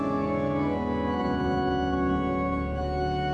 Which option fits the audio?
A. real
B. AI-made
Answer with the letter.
A